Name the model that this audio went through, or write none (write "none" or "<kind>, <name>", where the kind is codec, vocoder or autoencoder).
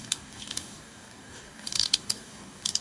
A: codec, DAC